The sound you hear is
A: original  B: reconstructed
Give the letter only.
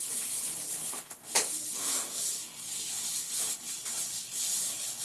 B